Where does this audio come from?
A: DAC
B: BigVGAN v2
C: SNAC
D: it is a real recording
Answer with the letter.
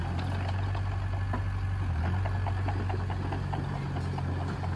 D